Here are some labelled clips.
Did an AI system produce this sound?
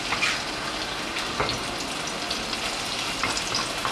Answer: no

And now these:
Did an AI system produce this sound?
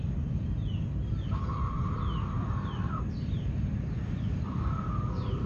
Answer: no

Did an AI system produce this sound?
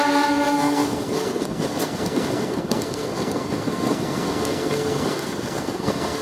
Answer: yes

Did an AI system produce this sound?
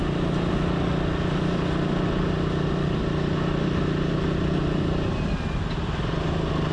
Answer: no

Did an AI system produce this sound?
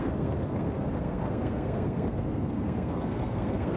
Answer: yes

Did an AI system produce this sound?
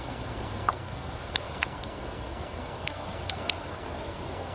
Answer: yes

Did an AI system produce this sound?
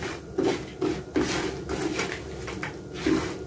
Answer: no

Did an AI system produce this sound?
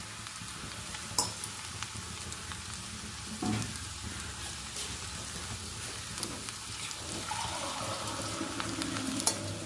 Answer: no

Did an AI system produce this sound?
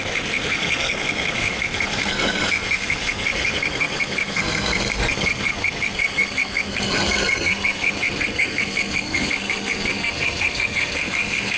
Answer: yes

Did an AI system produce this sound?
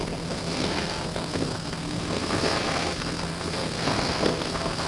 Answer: yes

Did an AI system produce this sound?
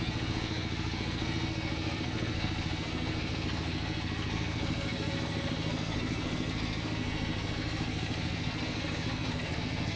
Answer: yes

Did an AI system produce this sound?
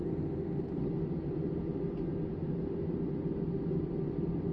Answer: no